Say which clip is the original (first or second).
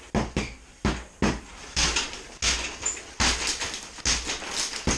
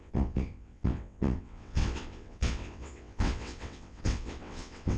first